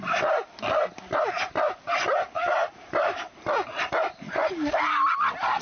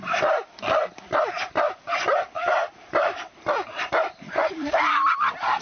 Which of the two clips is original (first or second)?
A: first